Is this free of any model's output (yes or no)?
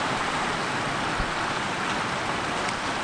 yes